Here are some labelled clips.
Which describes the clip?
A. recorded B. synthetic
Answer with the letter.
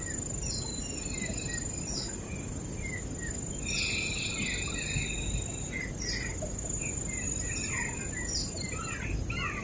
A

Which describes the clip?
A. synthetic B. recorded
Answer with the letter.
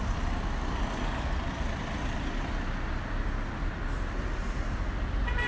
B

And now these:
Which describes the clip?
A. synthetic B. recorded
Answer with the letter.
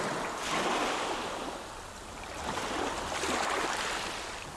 B